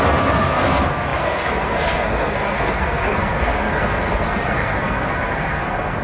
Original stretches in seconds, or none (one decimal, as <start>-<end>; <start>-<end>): none